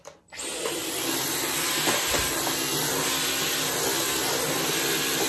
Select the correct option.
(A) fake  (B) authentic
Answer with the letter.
B